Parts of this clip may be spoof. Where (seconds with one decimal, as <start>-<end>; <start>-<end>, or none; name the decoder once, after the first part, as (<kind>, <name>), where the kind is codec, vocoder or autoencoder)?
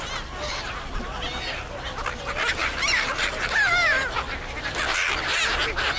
none